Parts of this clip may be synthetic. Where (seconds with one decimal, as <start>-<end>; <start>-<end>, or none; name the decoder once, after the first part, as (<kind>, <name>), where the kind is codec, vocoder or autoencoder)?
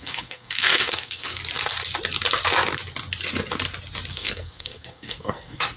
0.0-1.4 (codec, SNAC); 4.1-5.8